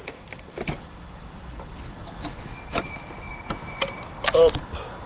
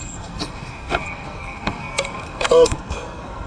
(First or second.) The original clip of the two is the first